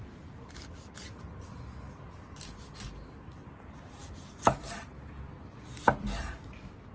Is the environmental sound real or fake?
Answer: real